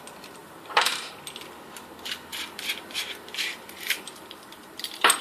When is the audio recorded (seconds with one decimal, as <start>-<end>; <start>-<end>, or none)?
0.0-0.4; 1.2-2.3